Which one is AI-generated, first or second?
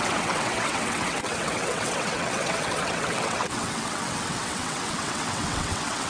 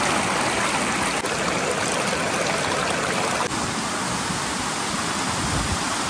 first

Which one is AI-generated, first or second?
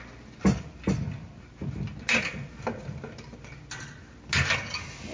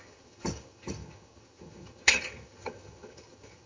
second